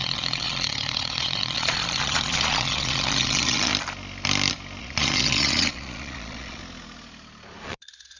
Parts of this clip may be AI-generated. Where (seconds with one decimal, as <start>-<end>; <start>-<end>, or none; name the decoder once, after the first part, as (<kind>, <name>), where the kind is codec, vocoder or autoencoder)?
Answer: 0.0-3.7 (vocoder, Vocos); 4.8-6.6; 7.6-8.2